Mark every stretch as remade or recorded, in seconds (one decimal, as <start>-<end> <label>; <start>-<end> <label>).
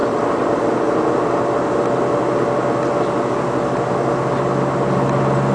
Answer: 0.0-0.9 remade; 0.9-5.5 recorded